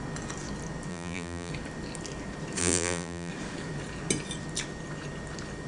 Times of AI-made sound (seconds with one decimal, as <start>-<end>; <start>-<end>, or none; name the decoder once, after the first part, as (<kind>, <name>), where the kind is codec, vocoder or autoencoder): 0.9-1.5 (vocoder, BigVGAN v2); 2.6-3.3